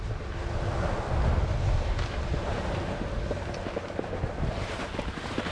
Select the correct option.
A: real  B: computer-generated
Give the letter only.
A